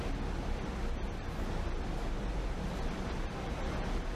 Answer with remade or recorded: recorded